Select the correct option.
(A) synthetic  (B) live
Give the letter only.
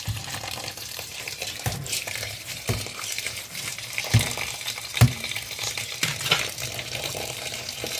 A